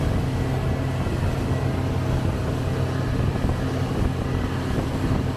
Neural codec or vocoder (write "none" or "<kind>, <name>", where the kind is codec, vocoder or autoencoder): none